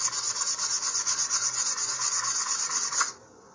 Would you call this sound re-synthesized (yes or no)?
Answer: yes